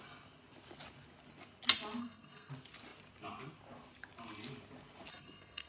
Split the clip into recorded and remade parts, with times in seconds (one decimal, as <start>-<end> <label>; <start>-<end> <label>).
0.0-2.0 recorded; 2.0-2.5 remade; 2.5-5.1 recorded; 5.1-5.7 remade